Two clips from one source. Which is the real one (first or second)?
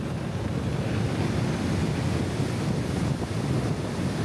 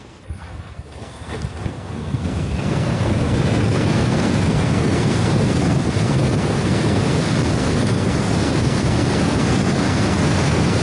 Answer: first